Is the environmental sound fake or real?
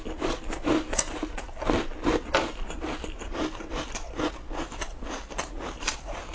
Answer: real